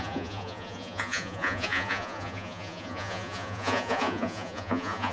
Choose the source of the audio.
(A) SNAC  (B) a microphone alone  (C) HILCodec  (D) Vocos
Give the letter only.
D